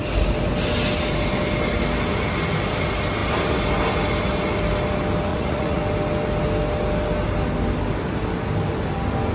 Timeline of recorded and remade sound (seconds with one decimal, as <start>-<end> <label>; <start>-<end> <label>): 0.0-5.3 recorded; 5.3-5.8 remade; 5.8-9.3 recorded